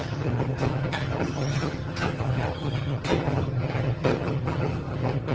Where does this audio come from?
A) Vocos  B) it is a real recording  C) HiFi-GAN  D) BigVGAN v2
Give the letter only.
C